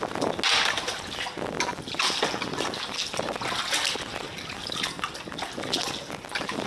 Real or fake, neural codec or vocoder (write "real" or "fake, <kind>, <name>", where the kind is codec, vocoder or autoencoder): real